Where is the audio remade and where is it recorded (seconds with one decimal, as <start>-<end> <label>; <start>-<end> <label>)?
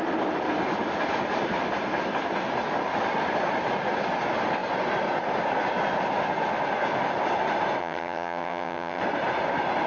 0.0-7.8 recorded; 7.8-9.0 remade; 9.0-9.9 recorded